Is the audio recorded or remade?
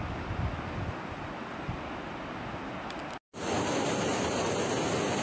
recorded